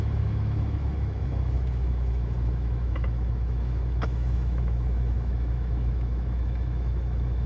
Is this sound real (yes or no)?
no